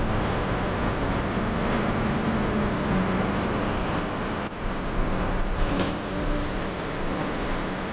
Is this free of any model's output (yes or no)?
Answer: yes